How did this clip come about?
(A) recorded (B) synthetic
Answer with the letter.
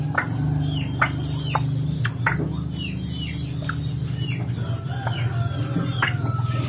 A